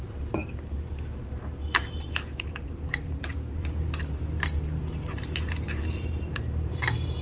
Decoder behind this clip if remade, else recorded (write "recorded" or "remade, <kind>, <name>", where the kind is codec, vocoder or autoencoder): remade, vocoder, BigVGAN v2